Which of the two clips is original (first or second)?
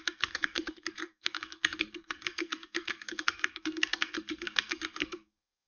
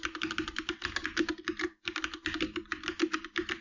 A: second